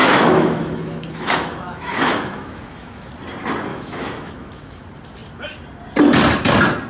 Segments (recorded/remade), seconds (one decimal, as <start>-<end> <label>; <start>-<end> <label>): 0.0-3.1 remade; 3.1-3.7 recorded; 3.7-4.8 remade; 4.8-6.9 recorded